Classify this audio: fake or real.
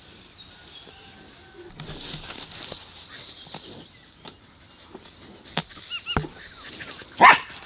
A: real